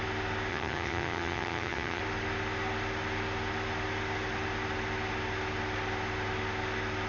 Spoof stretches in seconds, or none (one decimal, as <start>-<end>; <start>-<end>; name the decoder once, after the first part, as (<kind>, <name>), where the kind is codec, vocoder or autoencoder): 0.5-2.0 (vocoder, HiFi-GAN)